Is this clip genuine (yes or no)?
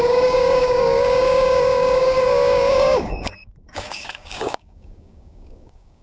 no